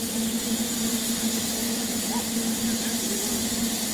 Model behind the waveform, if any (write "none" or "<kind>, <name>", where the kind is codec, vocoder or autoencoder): none